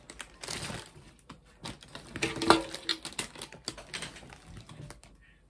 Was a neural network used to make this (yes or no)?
no